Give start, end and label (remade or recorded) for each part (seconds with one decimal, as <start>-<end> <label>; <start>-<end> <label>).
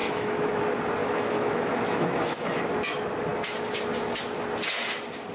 0.0-0.6 remade; 0.6-1.0 recorded; 1.0-2.2 remade; 2.2-5.3 recorded